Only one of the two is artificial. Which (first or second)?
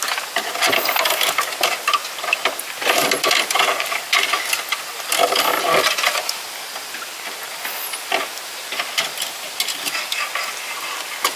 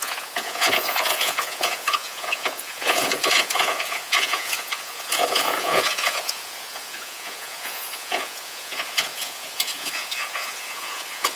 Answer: second